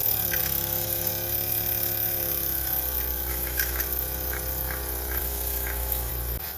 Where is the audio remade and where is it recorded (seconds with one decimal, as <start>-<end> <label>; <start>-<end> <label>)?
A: 0.0-0.4 recorded; 0.4-1.1 remade; 1.1-3.3 recorded; 3.3-3.8 remade; 3.8-5.2 recorded; 5.2-6.1 remade; 6.1-6.6 recorded